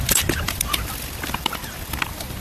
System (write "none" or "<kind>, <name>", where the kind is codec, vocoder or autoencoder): vocoder, BigVGAN v2